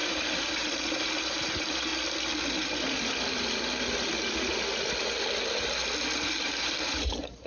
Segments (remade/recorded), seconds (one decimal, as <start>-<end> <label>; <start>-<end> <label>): 0.0-1.9 remade; 1.9-6.4 recorded; 6.4-7.5 remade